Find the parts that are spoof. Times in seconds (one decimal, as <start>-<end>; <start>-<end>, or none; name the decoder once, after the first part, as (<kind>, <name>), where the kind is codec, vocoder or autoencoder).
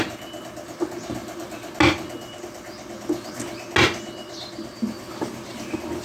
none